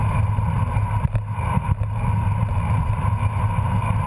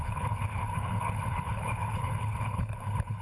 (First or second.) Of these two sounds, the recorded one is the first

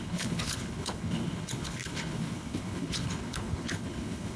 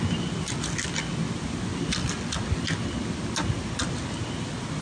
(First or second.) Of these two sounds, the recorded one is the second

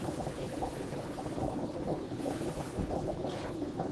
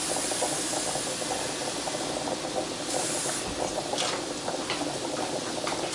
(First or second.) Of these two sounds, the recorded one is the second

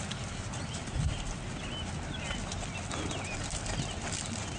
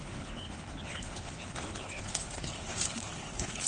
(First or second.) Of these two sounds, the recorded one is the first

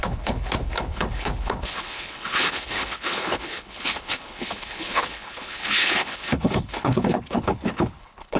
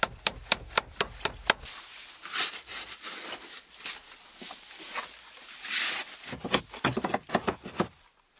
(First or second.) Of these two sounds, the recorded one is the second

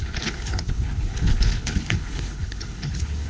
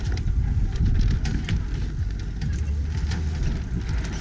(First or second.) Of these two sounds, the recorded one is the second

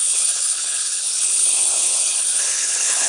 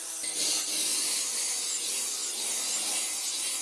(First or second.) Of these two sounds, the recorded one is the second